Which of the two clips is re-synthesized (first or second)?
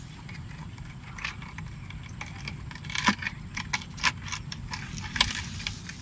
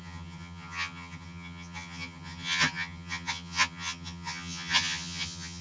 second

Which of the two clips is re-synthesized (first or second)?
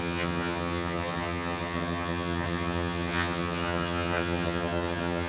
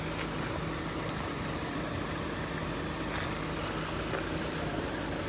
first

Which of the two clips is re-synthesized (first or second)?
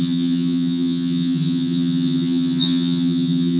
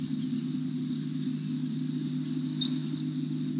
first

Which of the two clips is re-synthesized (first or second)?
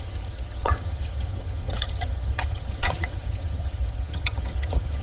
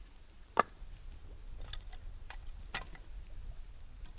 first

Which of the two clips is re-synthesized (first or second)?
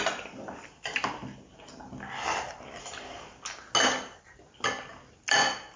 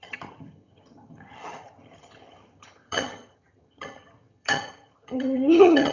second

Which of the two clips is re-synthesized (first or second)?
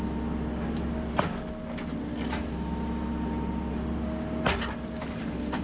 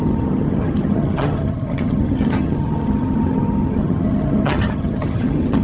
second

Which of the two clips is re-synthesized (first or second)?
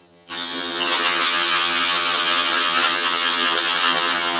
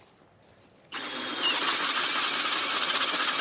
first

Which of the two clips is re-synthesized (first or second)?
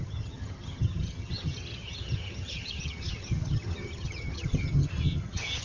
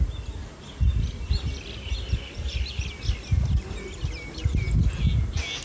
first